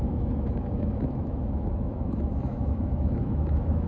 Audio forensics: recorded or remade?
remade